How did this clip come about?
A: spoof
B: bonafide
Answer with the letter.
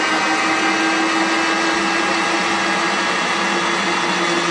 B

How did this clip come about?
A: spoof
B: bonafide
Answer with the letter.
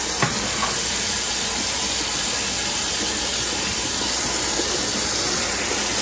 B